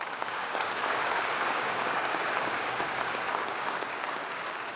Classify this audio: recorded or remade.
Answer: remade